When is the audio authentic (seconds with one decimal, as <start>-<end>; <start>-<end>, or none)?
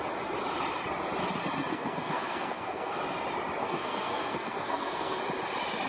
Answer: 0.0-1.7; 3.0-3.6; 5.2-5.9